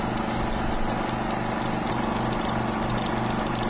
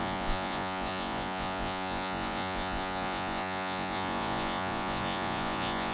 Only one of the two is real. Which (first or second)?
first